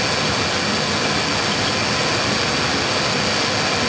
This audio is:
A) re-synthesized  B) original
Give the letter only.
B